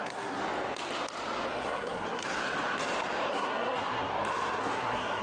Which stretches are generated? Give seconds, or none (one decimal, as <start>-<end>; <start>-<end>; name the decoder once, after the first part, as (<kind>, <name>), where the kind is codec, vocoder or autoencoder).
0.0-0.4 (codec, SNAC); 1.5-2.4; 3.3-4.1; 4.6-5.2